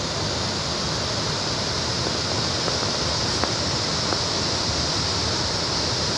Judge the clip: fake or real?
real